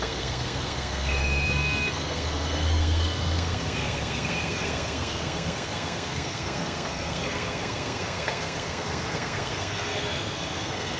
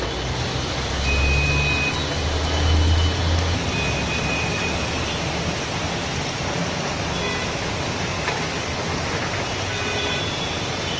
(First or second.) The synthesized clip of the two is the first